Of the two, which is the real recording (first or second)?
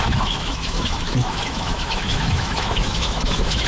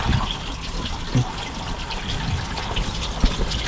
second